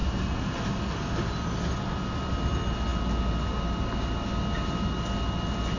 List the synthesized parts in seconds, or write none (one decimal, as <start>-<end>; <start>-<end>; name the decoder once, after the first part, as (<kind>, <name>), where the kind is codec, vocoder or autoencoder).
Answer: none